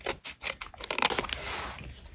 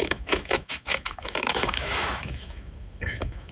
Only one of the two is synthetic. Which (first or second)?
second